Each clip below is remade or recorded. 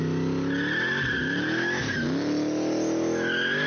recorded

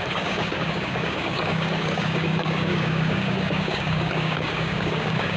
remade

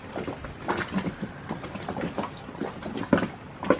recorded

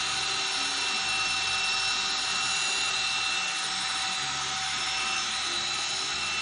recorded